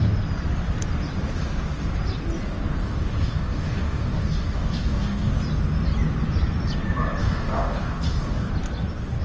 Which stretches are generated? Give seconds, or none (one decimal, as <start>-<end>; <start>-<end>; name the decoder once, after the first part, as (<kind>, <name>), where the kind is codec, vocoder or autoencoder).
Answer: 2.8-5.3 (codec, DAC); 7.2-8.5